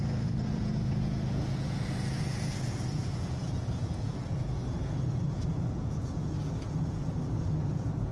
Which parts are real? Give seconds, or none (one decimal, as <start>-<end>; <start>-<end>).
none